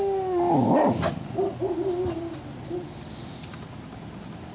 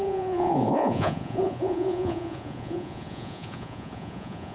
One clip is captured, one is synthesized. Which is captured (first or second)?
first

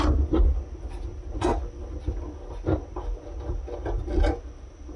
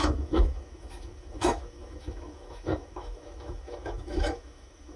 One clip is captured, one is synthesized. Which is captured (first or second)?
first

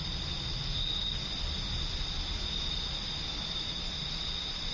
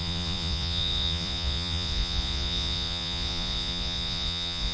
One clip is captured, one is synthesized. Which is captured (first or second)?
first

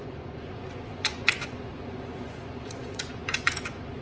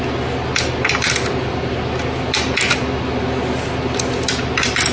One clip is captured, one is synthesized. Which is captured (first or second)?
second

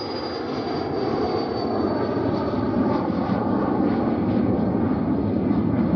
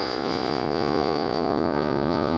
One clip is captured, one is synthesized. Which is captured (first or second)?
first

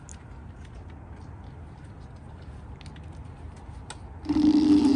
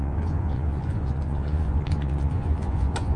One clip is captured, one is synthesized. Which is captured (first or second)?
first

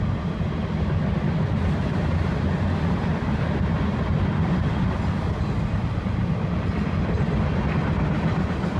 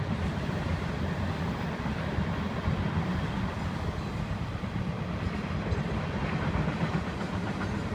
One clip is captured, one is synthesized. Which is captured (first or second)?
first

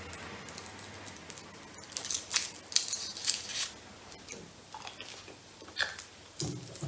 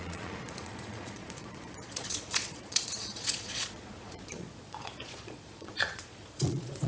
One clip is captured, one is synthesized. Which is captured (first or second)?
first